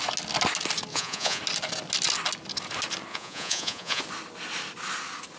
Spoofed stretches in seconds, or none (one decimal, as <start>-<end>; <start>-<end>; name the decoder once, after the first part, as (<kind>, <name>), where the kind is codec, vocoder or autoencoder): 0.9-1.4 (vocoder, Vocos); 3.1-4.0